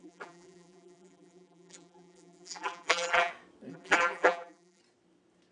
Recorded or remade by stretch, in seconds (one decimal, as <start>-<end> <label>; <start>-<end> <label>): 0.0-3.3 remade; 3.3-3.7 recorded; 3.7-4.8 remade; 4.8-5.5 recorded